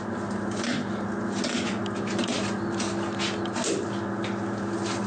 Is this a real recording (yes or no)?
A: yes